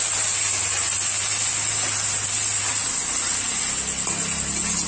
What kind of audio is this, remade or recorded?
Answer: recorded